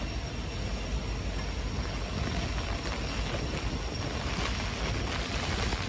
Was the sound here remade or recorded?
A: recorded